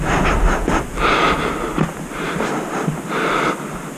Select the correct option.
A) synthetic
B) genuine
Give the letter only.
B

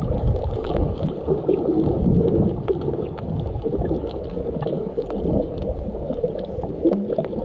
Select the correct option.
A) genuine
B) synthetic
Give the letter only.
B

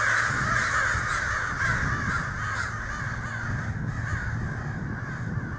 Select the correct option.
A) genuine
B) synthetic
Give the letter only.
A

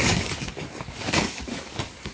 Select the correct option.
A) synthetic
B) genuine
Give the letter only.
A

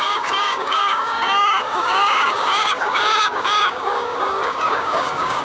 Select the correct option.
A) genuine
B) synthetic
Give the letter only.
B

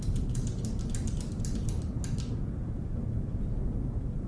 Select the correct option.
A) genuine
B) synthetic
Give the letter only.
A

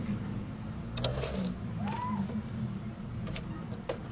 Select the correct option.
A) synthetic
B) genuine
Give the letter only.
B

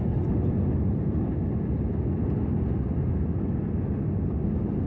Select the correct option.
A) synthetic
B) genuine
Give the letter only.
B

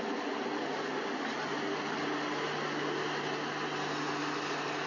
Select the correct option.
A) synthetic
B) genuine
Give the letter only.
B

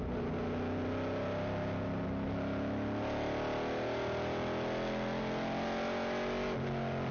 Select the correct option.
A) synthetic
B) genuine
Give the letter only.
B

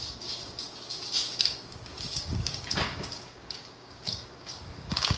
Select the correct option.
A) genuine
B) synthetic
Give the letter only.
B